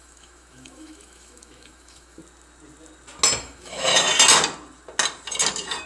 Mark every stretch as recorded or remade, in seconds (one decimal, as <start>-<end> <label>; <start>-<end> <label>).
0.0-2.2 remade; 2.2-3.4 recorded; 3.4-3.9 remade; 3.9-5.9 recorded